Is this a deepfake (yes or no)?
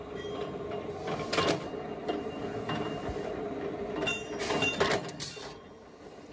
yes